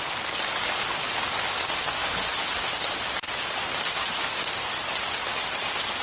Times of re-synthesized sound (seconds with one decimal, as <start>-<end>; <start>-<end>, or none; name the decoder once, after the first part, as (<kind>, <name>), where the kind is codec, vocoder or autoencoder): none